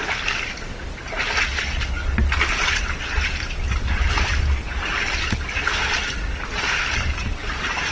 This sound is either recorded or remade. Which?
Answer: recorded